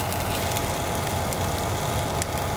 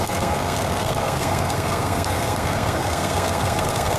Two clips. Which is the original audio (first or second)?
first